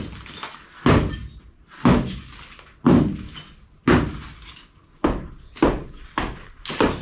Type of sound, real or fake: real